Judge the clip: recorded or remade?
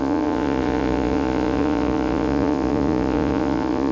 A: remade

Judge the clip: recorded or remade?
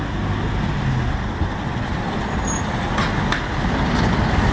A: recorded